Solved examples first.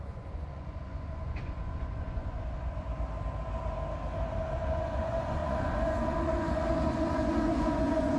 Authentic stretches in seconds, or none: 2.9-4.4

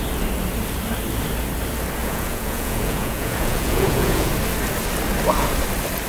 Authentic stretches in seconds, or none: 0.0-2.0; 4.3-6.1

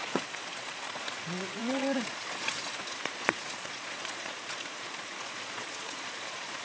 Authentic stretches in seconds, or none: none

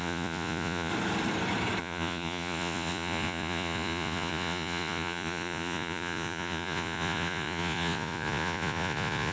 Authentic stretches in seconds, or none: 0.9-1.8

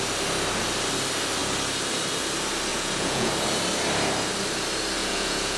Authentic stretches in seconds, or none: 0.0-2.7; 3.3-5.0

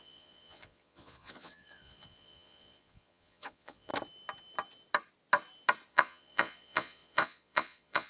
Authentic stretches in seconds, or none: 3.9-5.9

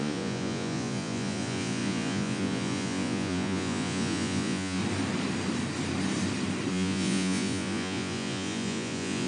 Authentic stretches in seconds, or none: 4.8-6.7

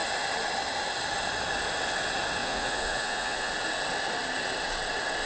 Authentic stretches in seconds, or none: 0.0-2.4; 3.5-5.3